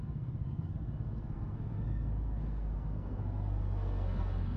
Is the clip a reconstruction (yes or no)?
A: yes